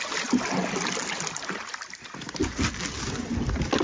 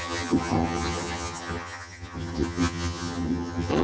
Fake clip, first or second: second